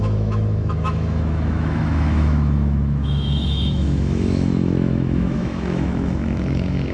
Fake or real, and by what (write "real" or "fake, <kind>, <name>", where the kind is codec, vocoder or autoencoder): fake, autoencoder, DAC-VAE